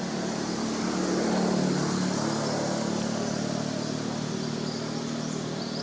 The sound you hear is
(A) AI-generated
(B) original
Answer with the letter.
B